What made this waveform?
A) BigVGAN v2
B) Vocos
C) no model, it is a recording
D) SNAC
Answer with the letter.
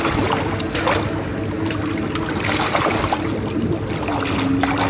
C